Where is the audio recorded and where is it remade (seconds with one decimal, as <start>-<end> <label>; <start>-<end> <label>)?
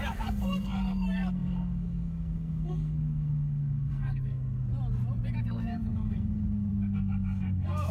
0.0-4.7 remade; 4.7-5.4 recorded; 5.4-7.9 remade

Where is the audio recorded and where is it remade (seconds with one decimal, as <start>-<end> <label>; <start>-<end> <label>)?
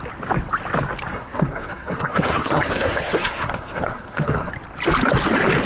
0.0-1.1 recorded; 1.1-4.5 remade; 4.5-5.7 recorded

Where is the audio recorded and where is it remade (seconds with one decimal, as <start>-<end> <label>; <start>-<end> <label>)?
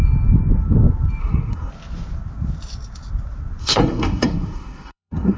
0.0-1.2 recorded; 1.2-1.7 remade; 1.7-3.6 recorded; 3.6-5.4 remade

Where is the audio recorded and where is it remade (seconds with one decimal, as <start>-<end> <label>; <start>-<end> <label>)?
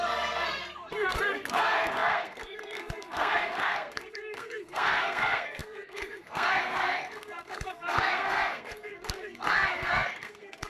0.0-10.7 remade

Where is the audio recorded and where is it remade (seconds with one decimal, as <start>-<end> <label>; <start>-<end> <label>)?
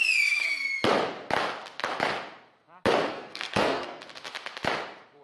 0.0-3.1 recorded; 3.1-4.0 remade; 4.0-5.2 recorded